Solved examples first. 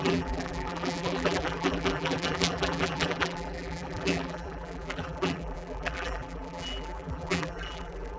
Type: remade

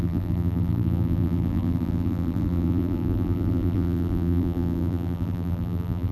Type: remade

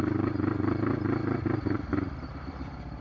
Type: remade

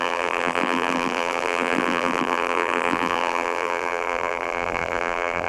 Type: remade